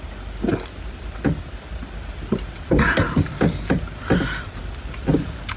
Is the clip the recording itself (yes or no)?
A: yes